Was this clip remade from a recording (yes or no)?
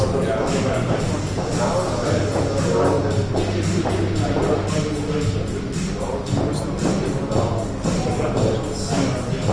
no